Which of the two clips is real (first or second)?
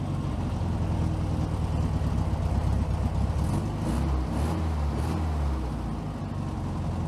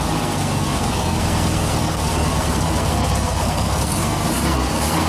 first